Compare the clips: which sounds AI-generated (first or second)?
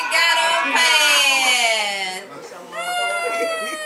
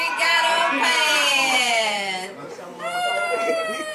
second